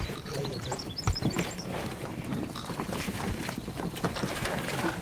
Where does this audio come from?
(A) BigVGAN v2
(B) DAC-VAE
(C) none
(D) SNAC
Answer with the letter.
A